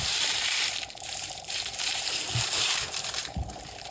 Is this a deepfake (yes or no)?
yes